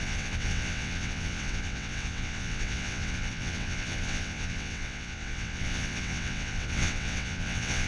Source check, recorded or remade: remade